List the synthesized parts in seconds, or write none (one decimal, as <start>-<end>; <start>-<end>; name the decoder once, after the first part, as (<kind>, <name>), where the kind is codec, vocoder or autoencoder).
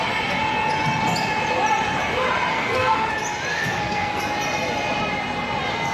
2.5-3.1 (codec, SNAC); 3.5-4.2